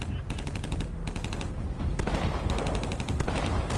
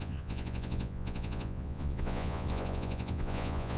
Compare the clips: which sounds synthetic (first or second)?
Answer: second